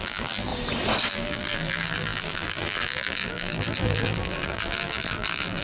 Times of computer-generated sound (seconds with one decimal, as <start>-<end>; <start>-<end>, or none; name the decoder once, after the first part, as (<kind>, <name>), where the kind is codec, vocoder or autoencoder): 0.0-0.5 (vocoder, BigVGAN v2); 1.1-5.6